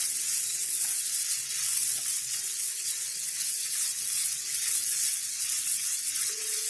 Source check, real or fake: fake